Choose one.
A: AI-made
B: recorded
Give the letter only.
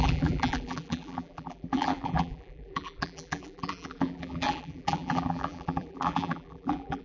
A